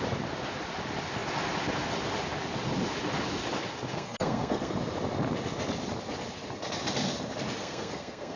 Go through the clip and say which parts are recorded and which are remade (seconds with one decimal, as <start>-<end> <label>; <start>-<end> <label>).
0.0-3.9 recorded; 3.9-4.7 remade; 4.7-7.6 recorded; 7.6-8.4 remade